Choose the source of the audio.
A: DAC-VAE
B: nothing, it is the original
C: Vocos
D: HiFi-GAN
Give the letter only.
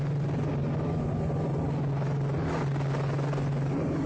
B